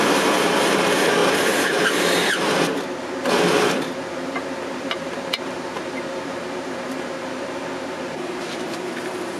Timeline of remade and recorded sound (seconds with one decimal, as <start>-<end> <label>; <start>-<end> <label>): 0.0-9.4 remade